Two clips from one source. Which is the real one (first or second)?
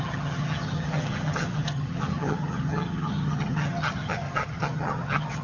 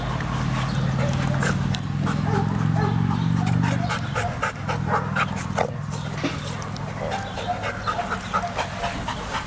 second